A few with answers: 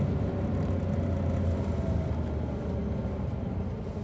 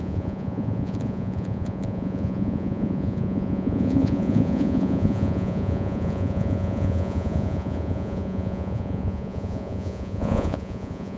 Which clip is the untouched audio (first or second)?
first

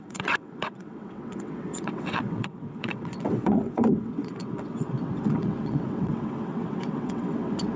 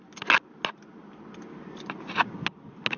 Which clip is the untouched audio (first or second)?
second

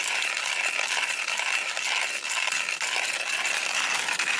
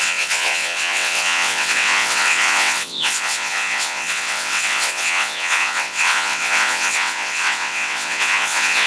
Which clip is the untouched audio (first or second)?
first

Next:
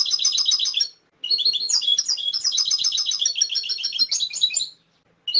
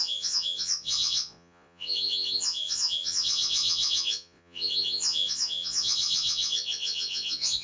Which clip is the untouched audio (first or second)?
first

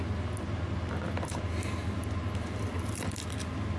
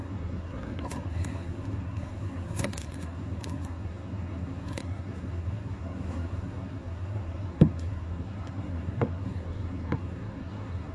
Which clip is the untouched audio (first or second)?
first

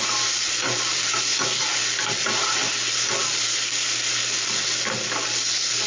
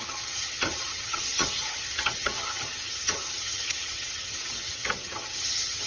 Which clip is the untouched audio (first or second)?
first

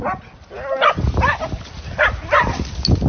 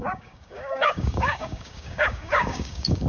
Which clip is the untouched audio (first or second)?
first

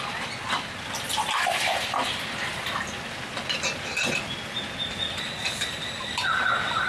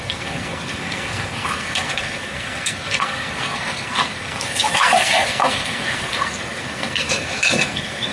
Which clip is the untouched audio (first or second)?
first